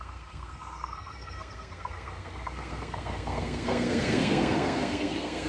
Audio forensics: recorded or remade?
remade